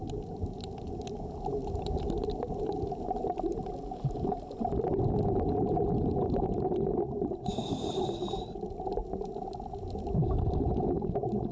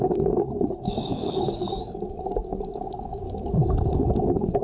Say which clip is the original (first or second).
first